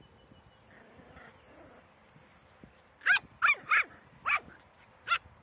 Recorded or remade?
recorded